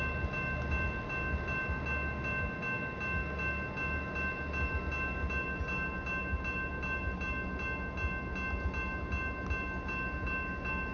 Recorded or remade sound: recorded